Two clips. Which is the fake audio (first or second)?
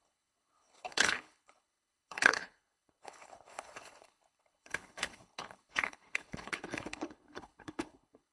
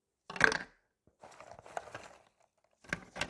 first